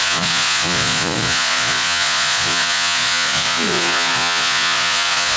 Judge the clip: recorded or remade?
remade